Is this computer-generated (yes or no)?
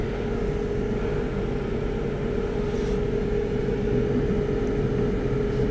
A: no